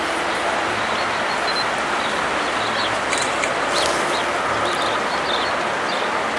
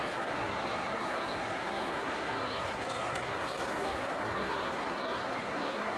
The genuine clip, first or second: first